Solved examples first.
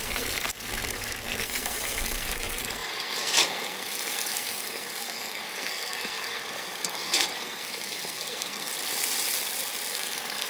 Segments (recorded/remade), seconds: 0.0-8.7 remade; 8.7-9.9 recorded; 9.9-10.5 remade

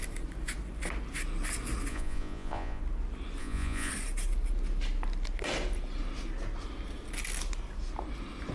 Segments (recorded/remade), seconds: 0.0-1.9 recorded; 1.9-2.8 remade; 2.8-3.4 recorded; 3.4-3.9 remade; 3.9-8.5 recorded

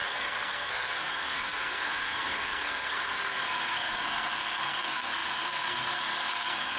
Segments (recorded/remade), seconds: 0.0-6.8 remade

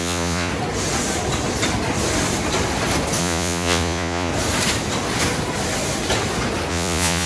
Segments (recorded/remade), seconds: 0.0-0.5 remade; 0.5-3.2 recorded; 3.2-4.3 remade; 4.3-6.7 recorded; 6.7-7.3 remade

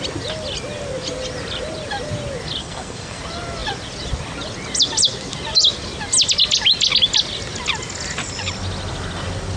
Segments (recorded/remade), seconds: 0.0-2.6 recorded; 2.6-3.2 remade; 3.2-9.6 recorded

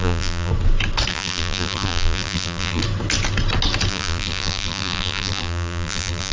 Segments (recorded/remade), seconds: 0.0-0.5 remade; 0.5-1.1 recorded; 1.1-2.8 remade; 2.8-3.9 recorded; 3.9-6.3 remade

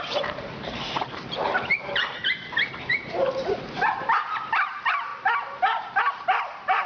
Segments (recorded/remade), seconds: 0.0-5.1 remade; 5.1-6.1 recorded; 6.1-6.9 remade